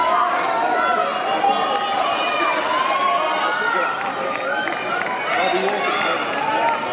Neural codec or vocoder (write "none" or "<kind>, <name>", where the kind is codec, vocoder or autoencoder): none